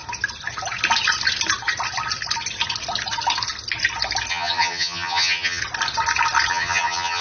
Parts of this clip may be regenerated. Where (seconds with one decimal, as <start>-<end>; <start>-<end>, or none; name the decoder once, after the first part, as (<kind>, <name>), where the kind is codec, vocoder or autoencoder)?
4.3-5.6 (vocoder, HiFi-GAN); 6.5-7.2